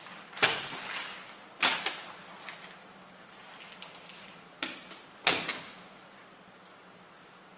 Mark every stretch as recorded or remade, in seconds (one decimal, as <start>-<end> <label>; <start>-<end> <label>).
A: 0.0-7.6 recorded